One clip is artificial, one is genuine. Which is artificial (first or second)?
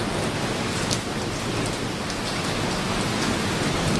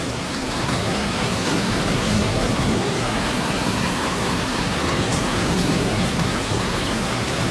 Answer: second